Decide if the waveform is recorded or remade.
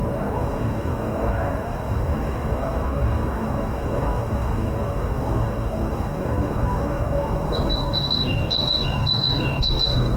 remade